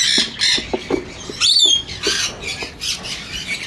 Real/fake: real